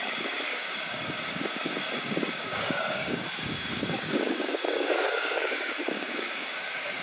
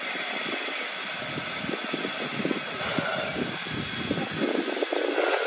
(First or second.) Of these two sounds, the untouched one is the second